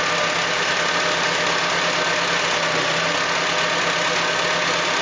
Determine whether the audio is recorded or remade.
recorded